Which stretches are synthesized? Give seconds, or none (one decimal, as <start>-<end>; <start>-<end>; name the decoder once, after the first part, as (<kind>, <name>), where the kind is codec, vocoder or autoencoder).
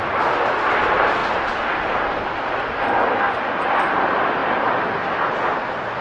none